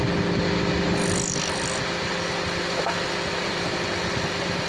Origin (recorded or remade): remade